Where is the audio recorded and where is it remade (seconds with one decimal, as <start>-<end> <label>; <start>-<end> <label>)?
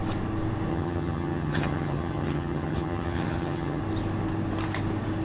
0.0-0.7 recorded; 0.7-3.8 remade; 3.8-5.2 recorded